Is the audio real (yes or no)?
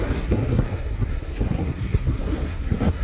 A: no